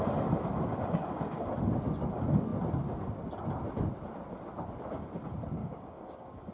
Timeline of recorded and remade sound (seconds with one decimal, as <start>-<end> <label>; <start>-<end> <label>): 0.0-0.5 recorded; 0.5-1.5 remade; 1.5-5.6 recorded; 5.6-6.5 remade